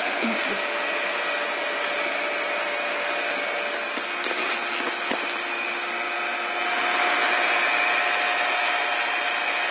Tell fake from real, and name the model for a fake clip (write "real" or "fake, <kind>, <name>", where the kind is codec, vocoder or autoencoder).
real